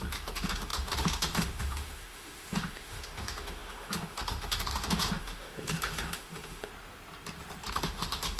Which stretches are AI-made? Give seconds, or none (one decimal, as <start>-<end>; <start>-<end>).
0.0-6.7; 7.7-8.4